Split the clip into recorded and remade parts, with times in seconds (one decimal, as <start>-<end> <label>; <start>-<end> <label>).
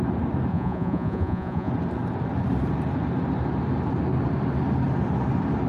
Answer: 0.0-0.5 recorded; 0.5-1.7 remade; 1.7-5.7 recorded